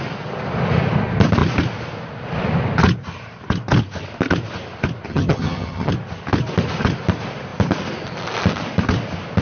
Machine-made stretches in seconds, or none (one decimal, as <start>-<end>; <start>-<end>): 5.1-5.9